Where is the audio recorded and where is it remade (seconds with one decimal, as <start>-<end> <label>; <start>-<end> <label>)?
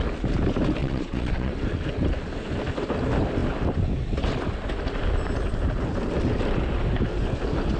0.0-0.8 recorded; 0.8-1.5 remade; 1.5-7.8 recorded